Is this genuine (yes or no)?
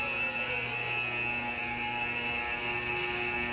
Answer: yes